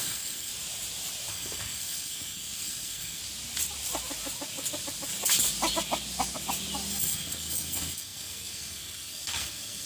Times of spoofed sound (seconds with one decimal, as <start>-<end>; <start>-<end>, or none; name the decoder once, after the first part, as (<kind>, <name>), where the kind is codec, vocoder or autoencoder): 0.0-0.5 (codec, SNAC); 1.3-3.2; 6.9-9.9